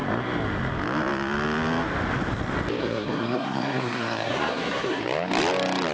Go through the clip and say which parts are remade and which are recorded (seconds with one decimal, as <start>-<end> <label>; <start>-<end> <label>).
0.0-2.8 recorded; 2.8-5.0 remade; 5.0-5.9 recorded

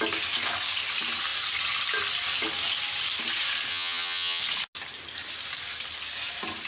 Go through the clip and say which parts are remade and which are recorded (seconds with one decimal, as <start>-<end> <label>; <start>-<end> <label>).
0.0-3.7 recorded; 3.7-4.4 remade; 4.4-6.7 recorded

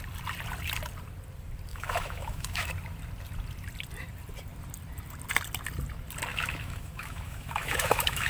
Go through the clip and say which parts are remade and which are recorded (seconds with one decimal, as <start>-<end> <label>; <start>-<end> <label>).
0.0-1.7 recorded; 1.7-2.7 remade; 2.7-6.3 recorded; 6.3-8.3 remade

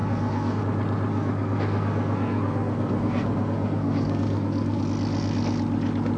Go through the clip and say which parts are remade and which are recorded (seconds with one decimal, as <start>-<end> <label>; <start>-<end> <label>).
0.0-0.6 remade; 0.6-1.1 recorded; 1.1-4.8 remade; 4.8-6.2 recorded